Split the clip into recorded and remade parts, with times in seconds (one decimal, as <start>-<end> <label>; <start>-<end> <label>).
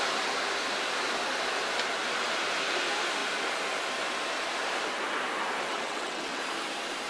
0.0-5.7 recorded; 5.7-6.4 remade; 6.4-7.1 recorded